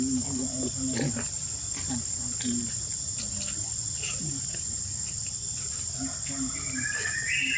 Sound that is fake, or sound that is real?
real